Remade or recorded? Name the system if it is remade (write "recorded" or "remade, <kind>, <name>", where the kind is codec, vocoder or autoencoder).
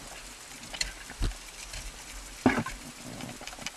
recorded